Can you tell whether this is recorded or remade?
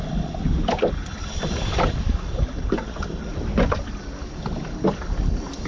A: recorded